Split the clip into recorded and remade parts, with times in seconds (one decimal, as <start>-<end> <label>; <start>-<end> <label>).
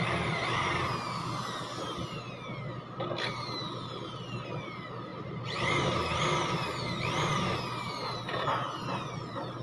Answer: 0.0-5.1 recorded; 5.1-6.2 remade; 6.2-9.6 recorded